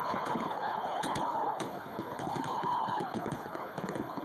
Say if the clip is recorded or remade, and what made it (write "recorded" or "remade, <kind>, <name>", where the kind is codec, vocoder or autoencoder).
remade, codec, HILCodec